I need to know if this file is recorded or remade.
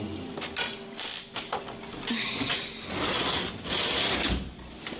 recorded